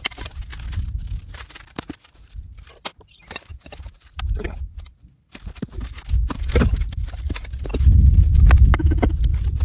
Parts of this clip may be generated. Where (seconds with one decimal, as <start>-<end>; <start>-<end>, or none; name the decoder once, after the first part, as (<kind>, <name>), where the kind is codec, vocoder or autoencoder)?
0.0-0.5 (vocoder, BigVGAN v2); 1.3-9.6